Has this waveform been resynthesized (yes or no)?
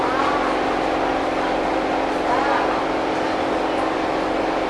no